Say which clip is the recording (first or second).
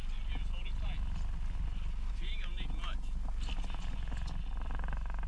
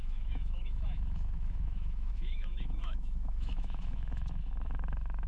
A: first